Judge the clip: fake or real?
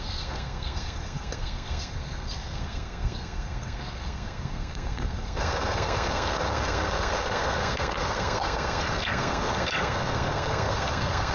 fake